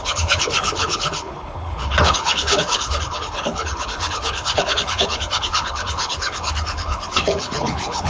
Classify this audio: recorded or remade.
remade